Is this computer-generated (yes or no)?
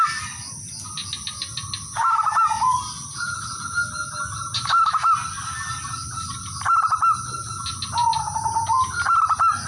no